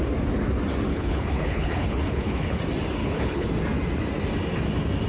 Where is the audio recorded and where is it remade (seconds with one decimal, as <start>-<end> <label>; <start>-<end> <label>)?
0.0-0.9 recorded; 0.9-2.6 remade; 2.6-3.0 recorded; 3.0-3.5 remade; 3.5-5.1 recorded